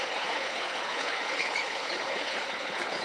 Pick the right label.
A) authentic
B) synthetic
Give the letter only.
B